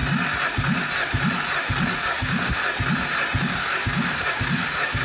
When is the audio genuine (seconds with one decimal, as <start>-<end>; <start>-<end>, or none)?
0.0-2.0; 2.6-3.4